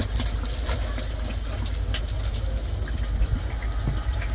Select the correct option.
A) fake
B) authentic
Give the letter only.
B